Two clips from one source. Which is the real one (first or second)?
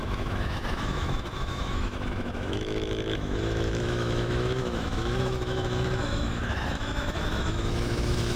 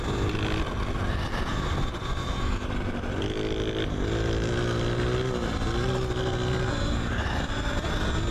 second